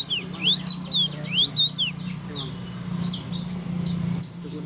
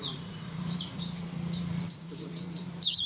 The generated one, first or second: second